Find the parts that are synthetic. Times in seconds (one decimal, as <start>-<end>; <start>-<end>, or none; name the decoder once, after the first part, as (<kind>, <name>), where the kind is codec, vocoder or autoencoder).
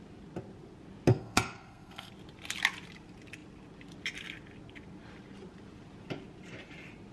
1.1-2.1 (codec, SNAC)